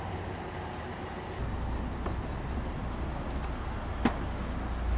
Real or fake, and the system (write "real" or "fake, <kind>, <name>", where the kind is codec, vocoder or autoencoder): real